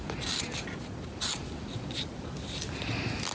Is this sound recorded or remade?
recorded